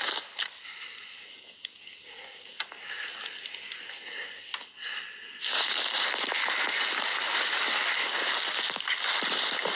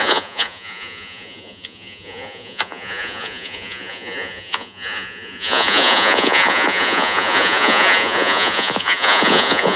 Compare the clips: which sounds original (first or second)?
first